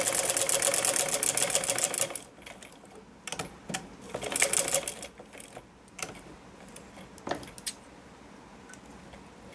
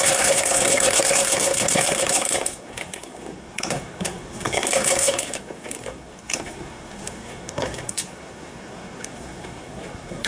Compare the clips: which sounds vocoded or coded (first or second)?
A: second